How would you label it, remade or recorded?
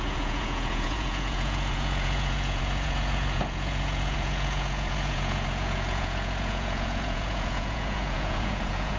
remade